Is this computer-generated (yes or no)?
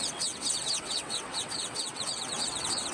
yes